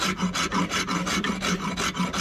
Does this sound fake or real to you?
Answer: real